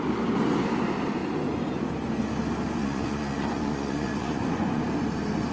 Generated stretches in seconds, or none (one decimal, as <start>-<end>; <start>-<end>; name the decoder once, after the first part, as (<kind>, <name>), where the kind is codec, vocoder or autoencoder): 2.8-4.8 (vocoder, Vocos)